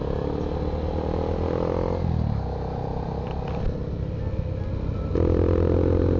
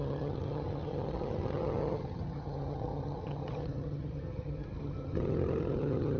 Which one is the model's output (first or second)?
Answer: second